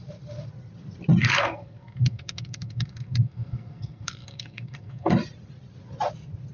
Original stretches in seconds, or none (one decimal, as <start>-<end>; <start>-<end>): 0.0-1.2; 5.1-6.5